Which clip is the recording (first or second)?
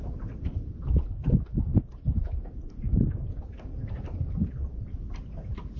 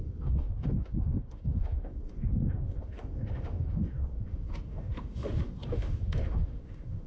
first